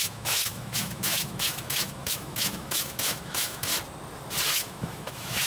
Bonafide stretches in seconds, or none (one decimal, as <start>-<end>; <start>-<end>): 3.7-4.5